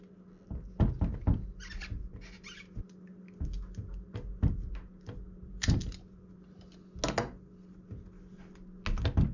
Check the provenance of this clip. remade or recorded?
recorded